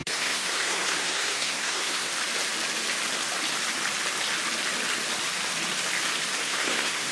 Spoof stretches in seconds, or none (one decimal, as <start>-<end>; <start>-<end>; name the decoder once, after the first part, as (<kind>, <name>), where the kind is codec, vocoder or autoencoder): 0.0-2.1 (codec, SNAC); 6.4-7.1

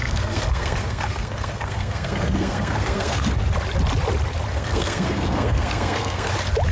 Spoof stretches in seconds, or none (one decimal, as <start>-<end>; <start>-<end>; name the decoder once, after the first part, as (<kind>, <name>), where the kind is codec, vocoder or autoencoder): 0.0-3.3 (codec, SNAC); 4.5-6.3

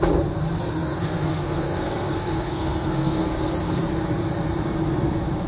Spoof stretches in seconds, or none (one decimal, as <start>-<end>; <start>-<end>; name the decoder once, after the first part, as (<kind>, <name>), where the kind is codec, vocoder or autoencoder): 0.6-3.8 (codec, SNAC)